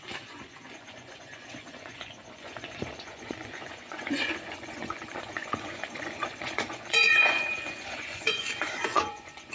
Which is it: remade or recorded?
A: remade